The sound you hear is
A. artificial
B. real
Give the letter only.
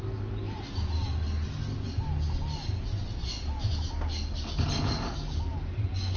B